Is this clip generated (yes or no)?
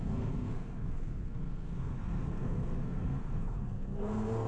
yes